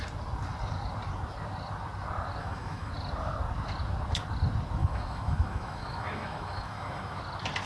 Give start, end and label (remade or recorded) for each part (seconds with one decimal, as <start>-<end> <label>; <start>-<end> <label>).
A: 0.0-2.4 recorded; 2.4-2.9 remade; 2.9-4.8 recorded; 4.8-7.2 remade; 7.2-7.7 recorded